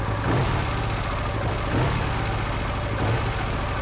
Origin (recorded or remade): recorded